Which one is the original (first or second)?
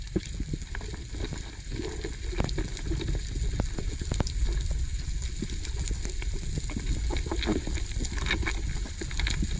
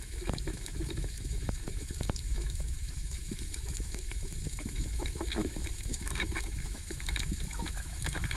first